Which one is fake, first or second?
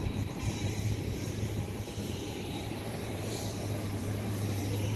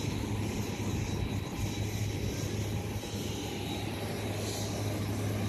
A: first